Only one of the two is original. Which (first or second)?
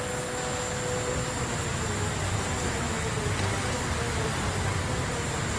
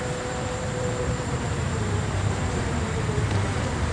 first